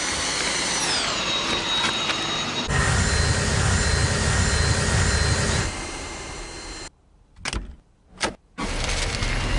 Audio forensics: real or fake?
real